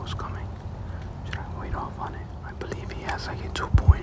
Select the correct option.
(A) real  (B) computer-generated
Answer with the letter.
A